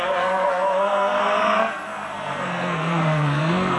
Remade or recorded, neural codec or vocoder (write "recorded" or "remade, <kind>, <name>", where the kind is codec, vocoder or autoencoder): remade, codec, SNAC